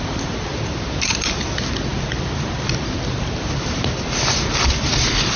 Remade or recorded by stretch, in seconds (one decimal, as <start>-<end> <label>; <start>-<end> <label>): 0.0-0.5 recorded; 0.5-1.1 remade; 1.1-5.4 recorded